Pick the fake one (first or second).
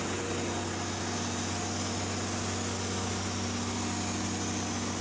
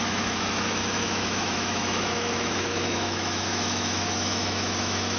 second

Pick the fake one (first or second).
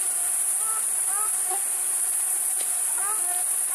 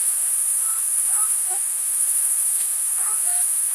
second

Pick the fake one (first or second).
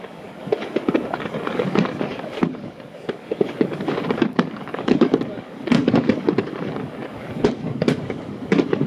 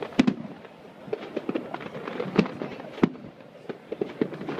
first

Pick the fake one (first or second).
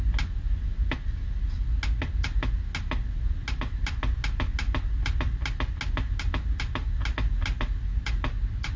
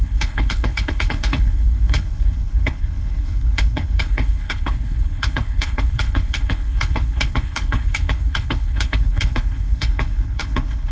second